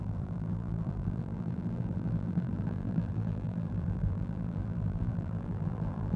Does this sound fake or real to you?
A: fake